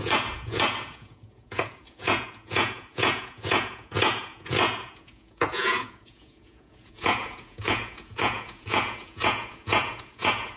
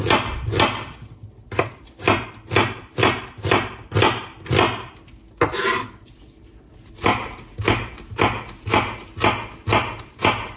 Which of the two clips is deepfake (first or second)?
first